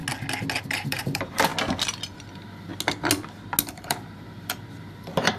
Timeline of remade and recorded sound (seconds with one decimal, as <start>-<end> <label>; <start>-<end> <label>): 0.0-0.6 recorded; 0.6-1.5 remade; 1.5-2.3 recorded; 2.3-2.7 remade; 2.7-3.7 recorded; 3.7-5.4 remade